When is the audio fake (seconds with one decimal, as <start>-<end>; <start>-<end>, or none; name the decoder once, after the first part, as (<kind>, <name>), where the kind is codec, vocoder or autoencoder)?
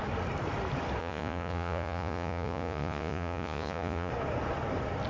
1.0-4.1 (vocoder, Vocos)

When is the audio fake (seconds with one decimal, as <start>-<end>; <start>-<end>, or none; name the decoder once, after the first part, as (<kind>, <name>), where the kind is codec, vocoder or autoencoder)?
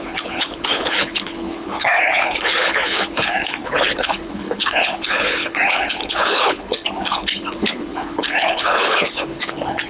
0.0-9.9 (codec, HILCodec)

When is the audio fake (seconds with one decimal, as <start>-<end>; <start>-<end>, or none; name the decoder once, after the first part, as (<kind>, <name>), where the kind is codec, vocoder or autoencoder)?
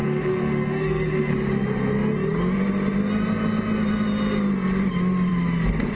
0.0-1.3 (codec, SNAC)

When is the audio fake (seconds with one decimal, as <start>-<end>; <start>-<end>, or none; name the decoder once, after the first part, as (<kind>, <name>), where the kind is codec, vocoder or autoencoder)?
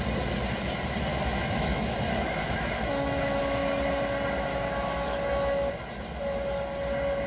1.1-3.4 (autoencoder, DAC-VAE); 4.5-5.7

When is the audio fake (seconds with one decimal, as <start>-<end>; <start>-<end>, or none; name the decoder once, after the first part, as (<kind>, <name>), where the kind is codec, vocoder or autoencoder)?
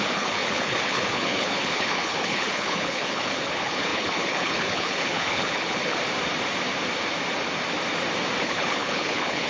0.0-6.0 (codec, HILCodec); 8.4-9.5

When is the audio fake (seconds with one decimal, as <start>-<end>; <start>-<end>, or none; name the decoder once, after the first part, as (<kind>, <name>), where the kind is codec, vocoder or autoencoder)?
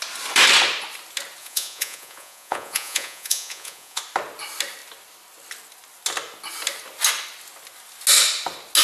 1.4-4.0 (vocoder, Vocos)